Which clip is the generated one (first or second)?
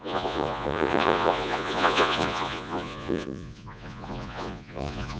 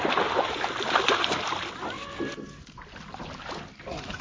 first